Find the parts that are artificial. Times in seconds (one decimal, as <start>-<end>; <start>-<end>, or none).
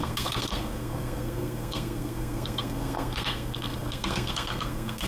0.0-5.1